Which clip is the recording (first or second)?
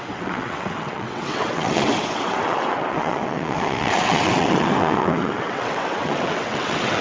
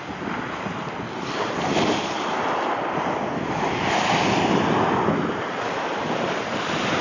second